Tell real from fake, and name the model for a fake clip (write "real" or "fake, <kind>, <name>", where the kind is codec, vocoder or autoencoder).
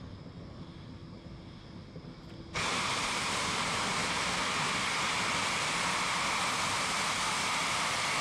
real